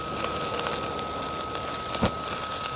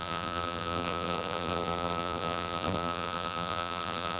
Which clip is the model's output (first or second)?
second